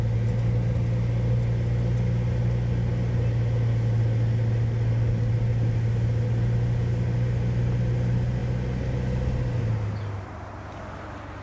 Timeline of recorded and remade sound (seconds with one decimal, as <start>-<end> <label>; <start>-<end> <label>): 0.0-11.4 recorded